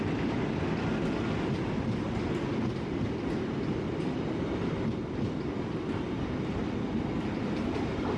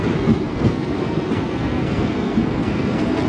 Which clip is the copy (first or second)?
second